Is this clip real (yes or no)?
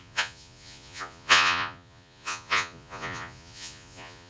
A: no